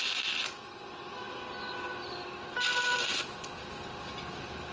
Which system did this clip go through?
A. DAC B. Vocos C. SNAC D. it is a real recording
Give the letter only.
D